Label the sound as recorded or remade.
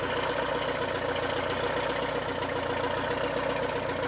recorded